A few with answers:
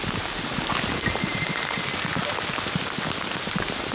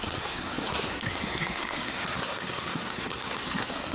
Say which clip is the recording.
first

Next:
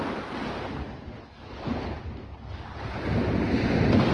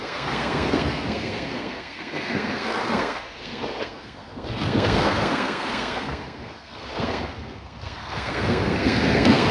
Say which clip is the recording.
first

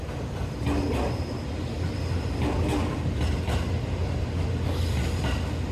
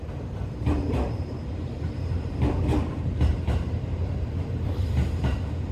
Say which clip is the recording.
first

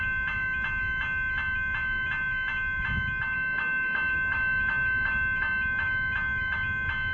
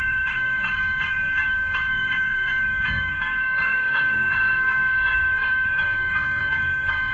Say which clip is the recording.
first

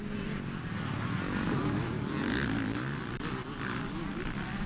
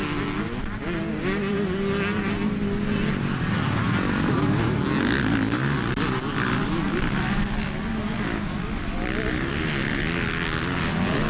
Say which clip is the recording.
second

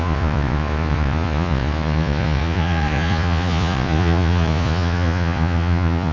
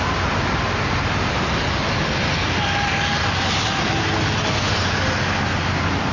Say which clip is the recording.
second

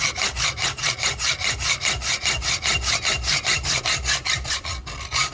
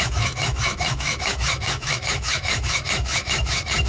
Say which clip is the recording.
first